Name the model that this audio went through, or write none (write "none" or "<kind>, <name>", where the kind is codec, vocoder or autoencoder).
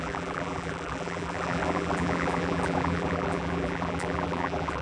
vocoder, BigVGAN v2